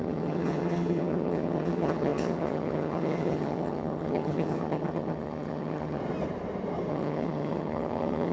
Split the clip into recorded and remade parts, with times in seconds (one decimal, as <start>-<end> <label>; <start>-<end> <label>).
0.0-6.0 remade; 6.0-6.9 recorded; 6.9-8.3 remade